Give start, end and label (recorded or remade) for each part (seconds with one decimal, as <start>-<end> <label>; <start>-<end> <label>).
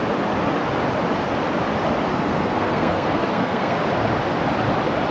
0.0-2.1 recorded; 2.1-3.8 remade; 3.8-5.1 recorded